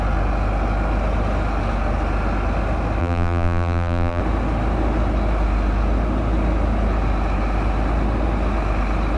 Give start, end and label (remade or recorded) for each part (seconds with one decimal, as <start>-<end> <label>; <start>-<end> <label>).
0.0-3.0 recorded; 3.0-4.2 remade; 4.2-9.2 recorded